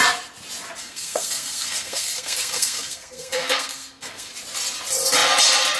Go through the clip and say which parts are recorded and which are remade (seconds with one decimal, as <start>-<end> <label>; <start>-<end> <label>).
0.0-0.8 recorded; 0.8-4.3 remade; 4.3-5.8 recorded